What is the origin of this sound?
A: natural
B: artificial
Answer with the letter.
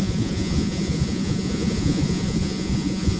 B